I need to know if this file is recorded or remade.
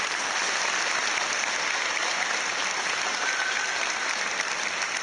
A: recorded